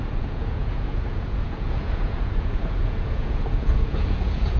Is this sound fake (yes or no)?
yes